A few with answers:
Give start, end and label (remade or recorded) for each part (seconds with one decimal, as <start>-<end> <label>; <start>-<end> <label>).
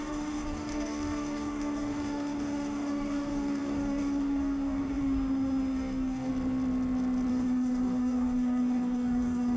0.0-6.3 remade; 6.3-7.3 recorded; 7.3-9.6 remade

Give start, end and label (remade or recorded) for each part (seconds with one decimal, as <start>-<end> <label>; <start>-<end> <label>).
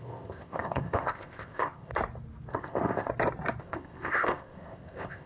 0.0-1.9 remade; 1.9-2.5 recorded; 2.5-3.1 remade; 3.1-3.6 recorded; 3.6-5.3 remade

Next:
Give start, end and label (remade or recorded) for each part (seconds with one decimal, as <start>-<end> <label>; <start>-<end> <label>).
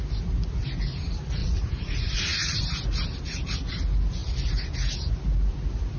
0.0-1.4 recorded; 1.4-2.6 remade; 2.6-6.0 recorded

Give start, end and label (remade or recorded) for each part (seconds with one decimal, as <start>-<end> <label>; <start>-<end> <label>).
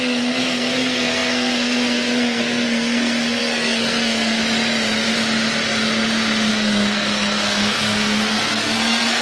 0.0-4.4 remade; 4.4-6.5 recorded; 6.5-9.2 remade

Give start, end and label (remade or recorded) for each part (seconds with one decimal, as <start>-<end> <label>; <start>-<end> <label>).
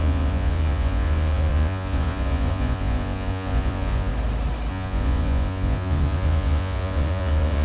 0.0-4.1 remade; 4.1-4.7 recorded; 4.7-7.6 remade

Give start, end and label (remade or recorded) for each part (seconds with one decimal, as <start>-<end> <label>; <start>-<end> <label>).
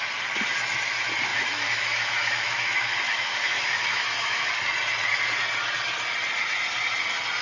0.0-1.3 recorded; 1.3-4.5 remade; 4.5-7.4 recorded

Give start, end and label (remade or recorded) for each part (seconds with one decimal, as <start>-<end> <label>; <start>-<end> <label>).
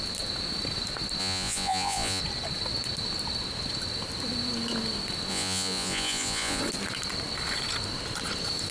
0.0-1.2 recorded; 1.2-2.2 remade; 2.2-5.3 recorded; 5.3-6.6 remade; 6.6-8.7 recorded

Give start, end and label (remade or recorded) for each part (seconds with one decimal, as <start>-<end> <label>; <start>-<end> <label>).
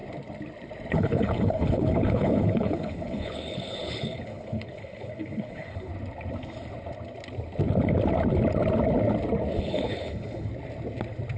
0.0-0.9 recorded; 0.9-5.9 remade; 5.9-9.6 recorded; 9.6-10.5 remade; 10.5-11.4 recorded